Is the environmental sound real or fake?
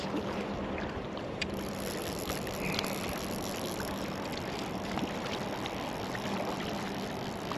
real